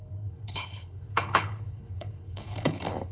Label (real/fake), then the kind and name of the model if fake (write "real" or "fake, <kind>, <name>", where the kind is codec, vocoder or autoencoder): fake, codec, HILCodec